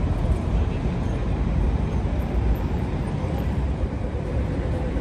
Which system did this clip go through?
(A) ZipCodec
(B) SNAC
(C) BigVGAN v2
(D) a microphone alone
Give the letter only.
C